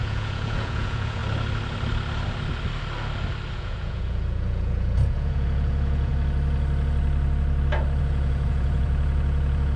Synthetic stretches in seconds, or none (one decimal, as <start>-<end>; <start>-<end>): 0.0-1.2; 3.5-6.1; 8.0-9.8